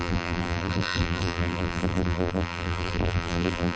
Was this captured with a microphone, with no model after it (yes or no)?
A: no